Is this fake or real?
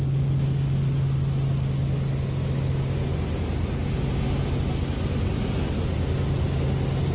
real